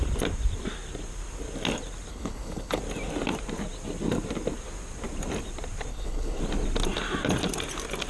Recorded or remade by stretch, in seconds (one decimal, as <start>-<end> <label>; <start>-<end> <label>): 0.0-2.1 recorded; 2.1-2.8 remade; 2.8-5.9 recorded; 5.9-6.4 remade; 6.4-8.1 recorded

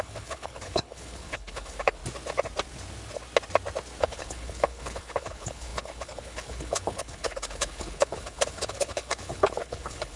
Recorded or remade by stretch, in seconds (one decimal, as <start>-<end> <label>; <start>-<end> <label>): 0.0-2.0 remade; 2.0-4.0 recorded; 4.0-10.2 remade